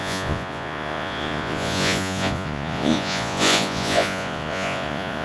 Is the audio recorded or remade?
remade